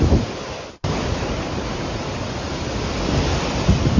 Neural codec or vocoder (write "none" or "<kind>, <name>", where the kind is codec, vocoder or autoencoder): none